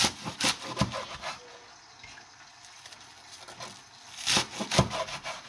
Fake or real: real